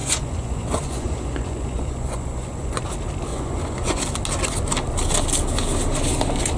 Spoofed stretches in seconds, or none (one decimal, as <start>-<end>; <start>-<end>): 0.0-2.8; 3.3-4.0